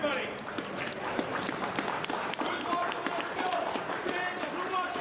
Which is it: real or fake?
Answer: fake